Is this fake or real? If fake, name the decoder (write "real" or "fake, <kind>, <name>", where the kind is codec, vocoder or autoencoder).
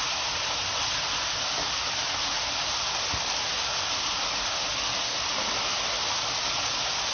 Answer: real